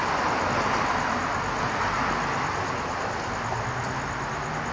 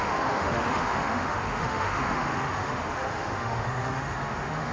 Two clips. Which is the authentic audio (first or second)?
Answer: first